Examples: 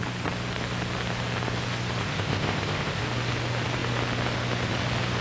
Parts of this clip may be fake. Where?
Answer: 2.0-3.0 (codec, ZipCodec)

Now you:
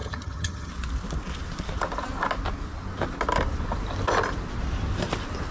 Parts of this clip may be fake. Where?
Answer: 0.0-0.7 (vocoder, HiFi-GAN)

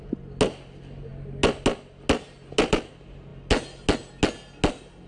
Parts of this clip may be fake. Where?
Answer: none

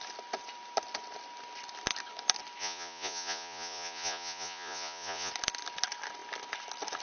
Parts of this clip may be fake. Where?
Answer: 2.6-5.3 (vocoder, Vocos)

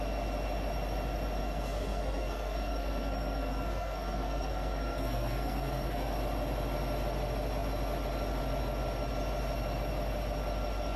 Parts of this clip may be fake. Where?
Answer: 1.4-6.1 (codec, SNAC)

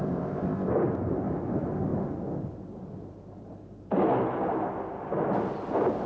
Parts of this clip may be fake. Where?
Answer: 0.0-0.7 (codec, ZipCodec)

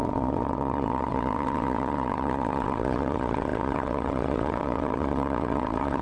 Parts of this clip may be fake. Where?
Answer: 0.0-6.0 (vocoder, WaveNeXt)

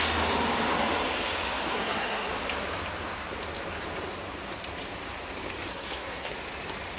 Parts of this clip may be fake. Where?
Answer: 1.7-2.3 (codec, SNAC); 5.7-6.3